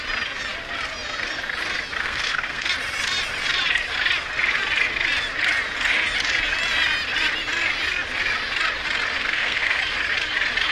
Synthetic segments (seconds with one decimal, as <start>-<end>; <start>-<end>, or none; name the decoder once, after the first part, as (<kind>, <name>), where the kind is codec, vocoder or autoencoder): 2.0-2.7 (codec, SNAC); 9.2-9.8